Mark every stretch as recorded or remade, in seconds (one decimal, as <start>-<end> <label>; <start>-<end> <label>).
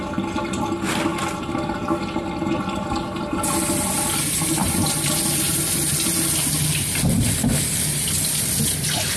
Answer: 0.0-4.6 recorded; 4.6-5.9 remade; 5.9-9.2 recorded